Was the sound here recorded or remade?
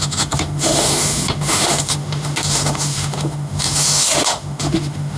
remade